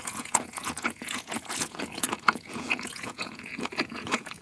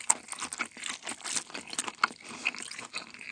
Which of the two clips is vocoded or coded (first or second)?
first